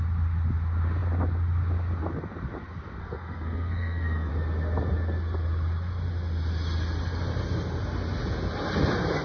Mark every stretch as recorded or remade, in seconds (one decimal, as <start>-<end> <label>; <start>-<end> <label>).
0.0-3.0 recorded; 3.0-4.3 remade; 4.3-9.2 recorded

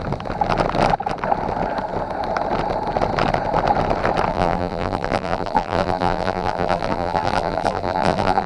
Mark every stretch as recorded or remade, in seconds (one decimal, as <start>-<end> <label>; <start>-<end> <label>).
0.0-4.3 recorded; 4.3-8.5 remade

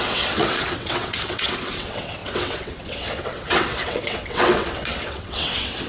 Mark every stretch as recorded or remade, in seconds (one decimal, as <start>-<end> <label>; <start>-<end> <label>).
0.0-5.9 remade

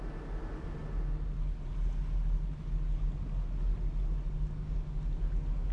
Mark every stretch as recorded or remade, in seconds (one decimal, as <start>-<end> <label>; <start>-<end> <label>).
0.0-5.7 recorded